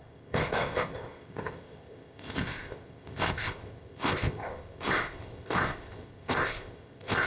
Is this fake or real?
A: fake